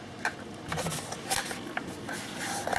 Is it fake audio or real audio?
real